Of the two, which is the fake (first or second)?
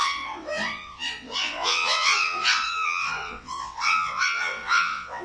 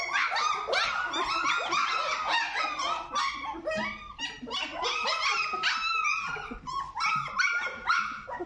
first